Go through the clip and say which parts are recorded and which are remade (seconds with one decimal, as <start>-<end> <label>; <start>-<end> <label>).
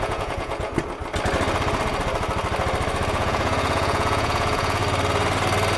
0.0-0.7 remade; 0.7-3.1 recorded; 3.1-4.8 remade; 4.8-5.8 recorded